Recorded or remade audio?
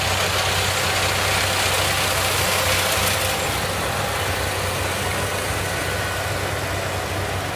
recorded